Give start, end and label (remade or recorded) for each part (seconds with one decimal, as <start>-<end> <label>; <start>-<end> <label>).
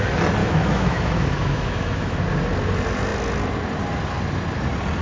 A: 0.0-0.4 recorded; 0.4-2.2 remade; 2.2-5.0 recorded